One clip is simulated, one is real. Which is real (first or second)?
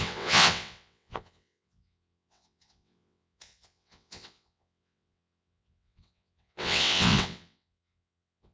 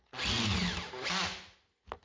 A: second